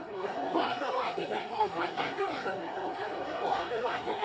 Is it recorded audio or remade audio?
remade